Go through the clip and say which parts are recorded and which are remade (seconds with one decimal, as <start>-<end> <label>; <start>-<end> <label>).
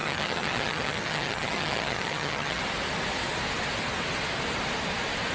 0.0-2.6 remade; 2.6-5.3 recorded